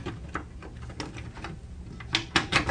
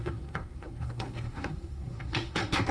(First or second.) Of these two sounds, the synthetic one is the second